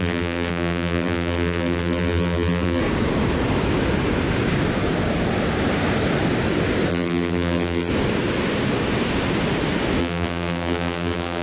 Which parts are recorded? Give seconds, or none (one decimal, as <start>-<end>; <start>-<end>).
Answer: 2.8-6.9; 7.9-10.0

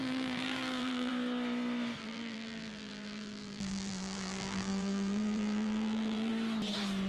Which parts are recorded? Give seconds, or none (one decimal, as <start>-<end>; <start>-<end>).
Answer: 1.1-2.0; 6.3-7.1

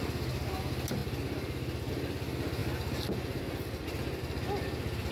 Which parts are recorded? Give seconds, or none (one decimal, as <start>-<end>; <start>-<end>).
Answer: 0.0-5.1

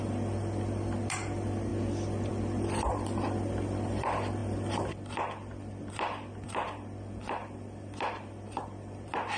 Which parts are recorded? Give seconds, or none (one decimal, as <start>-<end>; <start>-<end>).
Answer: 1.7-2.3; 4.4-5.9

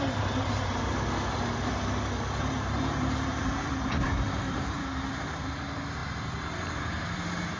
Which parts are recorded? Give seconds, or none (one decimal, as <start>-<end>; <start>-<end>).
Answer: 0.9-2.4

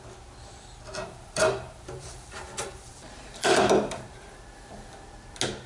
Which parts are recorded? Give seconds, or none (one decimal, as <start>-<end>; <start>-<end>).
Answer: 0.0-1.0; 4.4-5.7

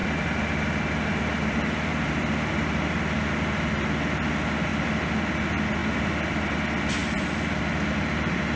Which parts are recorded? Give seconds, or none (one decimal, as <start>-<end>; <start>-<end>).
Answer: 2.5-4.7; 5.3-5.8; 6.5-8.6